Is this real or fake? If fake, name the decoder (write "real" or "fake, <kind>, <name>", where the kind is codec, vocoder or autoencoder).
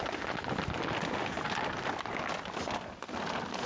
real